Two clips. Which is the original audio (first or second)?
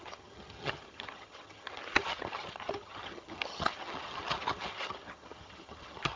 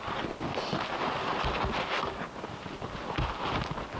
second